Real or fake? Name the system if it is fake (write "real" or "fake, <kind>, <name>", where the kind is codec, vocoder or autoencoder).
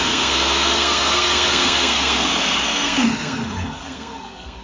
fake, codec, SNAC